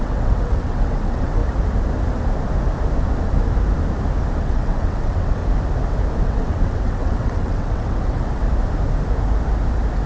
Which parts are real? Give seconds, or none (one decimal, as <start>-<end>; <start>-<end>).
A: 1.4-4.4; 5.4-6.2; 8.4-10.1